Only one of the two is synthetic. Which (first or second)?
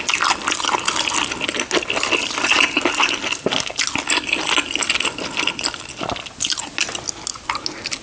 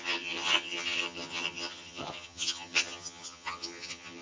second